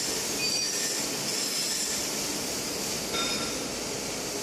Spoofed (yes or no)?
no